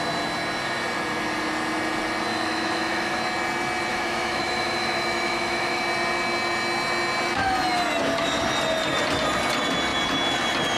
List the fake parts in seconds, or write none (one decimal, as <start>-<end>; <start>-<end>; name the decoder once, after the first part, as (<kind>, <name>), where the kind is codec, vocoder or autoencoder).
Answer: 2.3-3.2 (autoencoder, DAC-VAE); 3.9-5.8

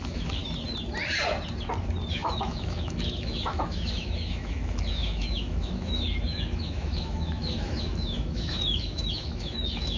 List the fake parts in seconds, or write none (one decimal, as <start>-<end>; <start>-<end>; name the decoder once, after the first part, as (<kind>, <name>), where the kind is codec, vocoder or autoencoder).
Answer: 0.0-0.4 (autoencoder, DAC-VAE); 2.1-10.0